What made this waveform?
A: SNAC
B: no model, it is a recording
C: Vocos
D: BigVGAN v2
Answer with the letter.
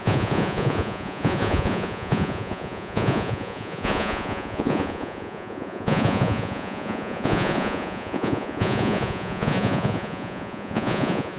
C